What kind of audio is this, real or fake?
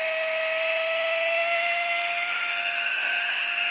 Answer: fake